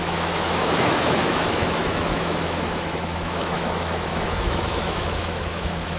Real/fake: fake